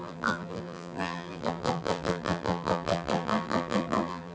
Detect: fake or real fake